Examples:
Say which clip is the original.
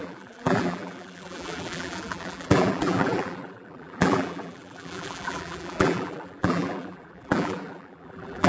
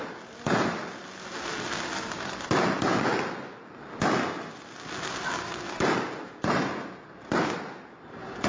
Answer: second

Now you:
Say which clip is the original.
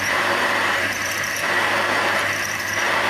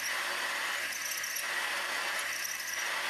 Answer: second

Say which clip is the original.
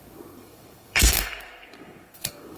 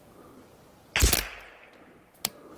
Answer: second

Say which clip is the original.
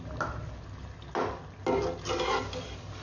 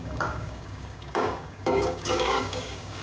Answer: first